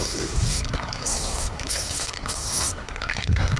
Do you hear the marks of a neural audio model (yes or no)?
yes